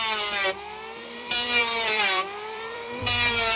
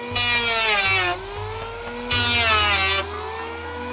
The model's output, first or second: first